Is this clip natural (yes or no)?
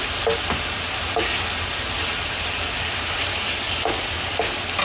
yes